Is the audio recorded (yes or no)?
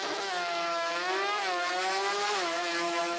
no